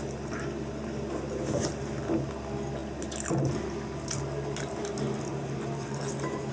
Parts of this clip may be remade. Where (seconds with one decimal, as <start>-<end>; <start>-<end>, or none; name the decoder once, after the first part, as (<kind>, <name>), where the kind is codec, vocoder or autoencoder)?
none